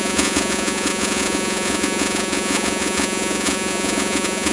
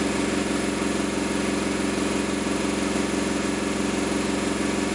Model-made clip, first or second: first